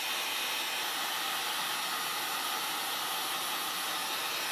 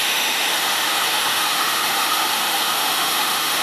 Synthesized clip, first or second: second